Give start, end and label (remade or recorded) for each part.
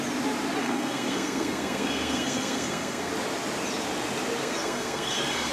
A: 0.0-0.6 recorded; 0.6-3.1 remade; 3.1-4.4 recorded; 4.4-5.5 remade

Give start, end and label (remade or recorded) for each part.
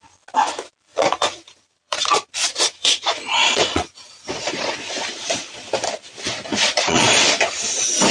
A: 0.0-0.9 recorded; 0.9-5.7 remade; 5.7-6.5 recorded; 6.5-7.2 remade; 7.2-8.1 recorded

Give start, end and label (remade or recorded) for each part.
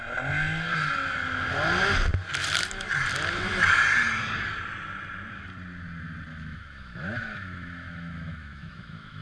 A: 0.0-6.3 recorded; 6.3-9.2 remade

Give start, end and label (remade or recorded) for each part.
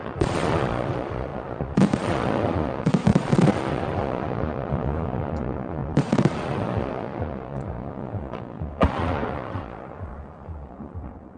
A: 0.0-11.4 remade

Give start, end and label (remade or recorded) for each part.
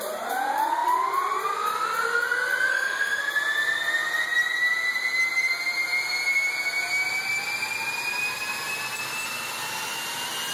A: 0.0-2.7 recorded; 2.7-3.2 remade; 3.2-10.5 recorded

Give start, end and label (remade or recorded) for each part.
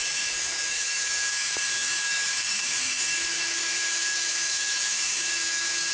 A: 0.0-5.9 remade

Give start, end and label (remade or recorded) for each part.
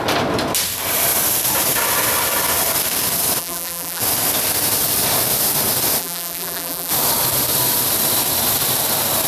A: 0.0-3.4 recorded; 3.4-4.0 remade; 4.0-6.0 recorded; 6.0-6.9 remade; 6.9-9.3 recorded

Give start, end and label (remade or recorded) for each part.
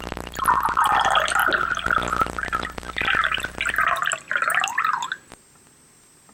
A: 0.0-6.3 recorded